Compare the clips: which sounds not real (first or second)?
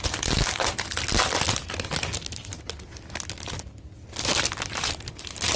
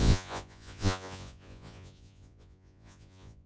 second